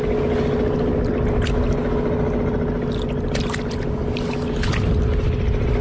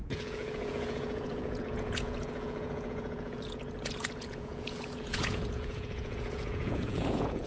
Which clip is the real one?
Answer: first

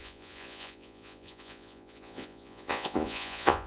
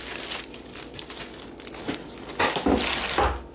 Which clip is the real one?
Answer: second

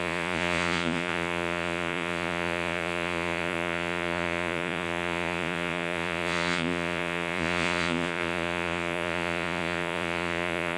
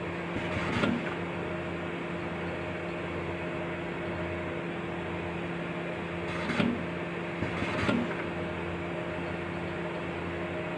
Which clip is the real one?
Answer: second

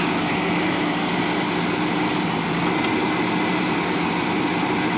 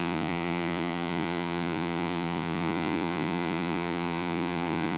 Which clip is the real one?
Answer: first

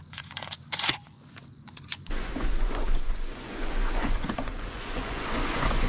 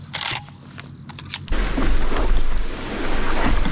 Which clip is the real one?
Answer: second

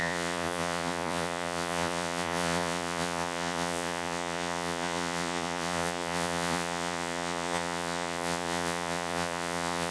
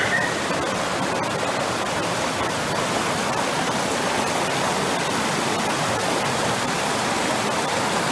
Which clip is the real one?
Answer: second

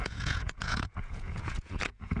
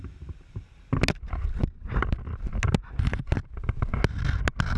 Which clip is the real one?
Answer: second